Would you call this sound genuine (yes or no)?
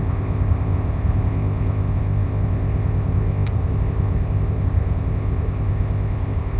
no